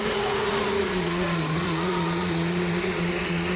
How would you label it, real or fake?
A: fake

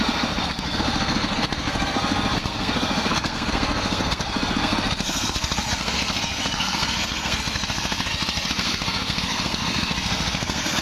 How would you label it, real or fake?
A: fake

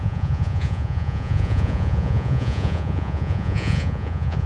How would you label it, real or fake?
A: fake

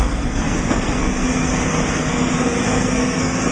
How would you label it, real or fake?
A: fake